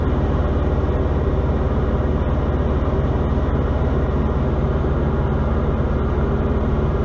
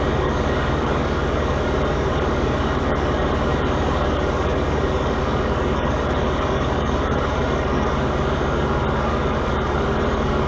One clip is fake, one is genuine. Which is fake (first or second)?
second